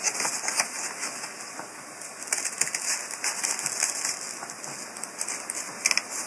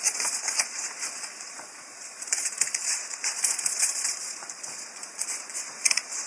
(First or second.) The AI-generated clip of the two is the second